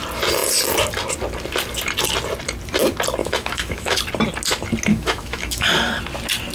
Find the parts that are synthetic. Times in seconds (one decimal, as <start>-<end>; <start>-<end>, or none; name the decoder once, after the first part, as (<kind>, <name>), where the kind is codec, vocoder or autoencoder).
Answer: 3.2-4.0 (autoencoder, DAC-VAE); 4.9-5.7